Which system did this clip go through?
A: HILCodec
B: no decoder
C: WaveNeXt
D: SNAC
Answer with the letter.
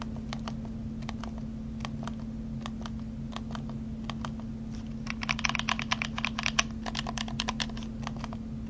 B